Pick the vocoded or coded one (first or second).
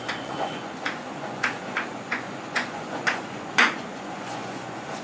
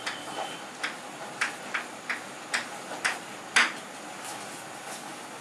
first